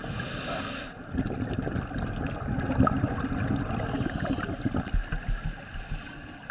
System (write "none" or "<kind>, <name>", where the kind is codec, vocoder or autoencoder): none